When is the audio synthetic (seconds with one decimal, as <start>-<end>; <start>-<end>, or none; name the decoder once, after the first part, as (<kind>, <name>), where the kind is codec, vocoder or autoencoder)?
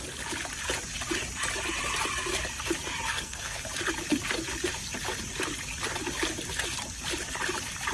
3.1-3.6 (codec, SNAC)